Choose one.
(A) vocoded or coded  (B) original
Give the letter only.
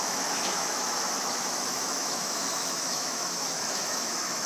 A